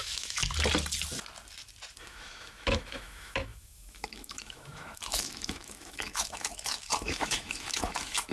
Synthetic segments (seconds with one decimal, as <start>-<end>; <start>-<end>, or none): 0.0-0.4; 2.0-8.3